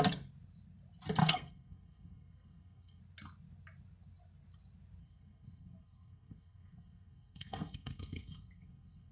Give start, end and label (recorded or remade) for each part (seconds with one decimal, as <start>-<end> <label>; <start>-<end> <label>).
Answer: 0.0-1.2 recorded; 1.2-3.0 remade; 3.0-5.0 recorded; 5.0-9.1 remade